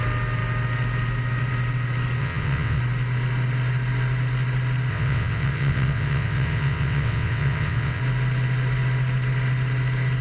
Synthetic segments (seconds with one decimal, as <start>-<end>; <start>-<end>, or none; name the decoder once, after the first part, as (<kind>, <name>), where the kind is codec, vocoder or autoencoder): 2.2-2.8 (vocoder, WaveNeXt); 4.9-8.0